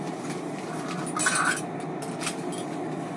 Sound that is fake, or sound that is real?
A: real